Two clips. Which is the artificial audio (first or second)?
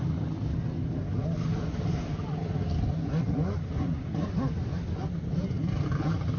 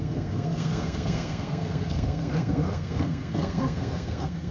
second